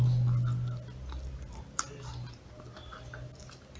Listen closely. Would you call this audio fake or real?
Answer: real